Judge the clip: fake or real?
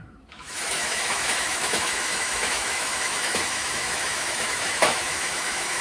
fake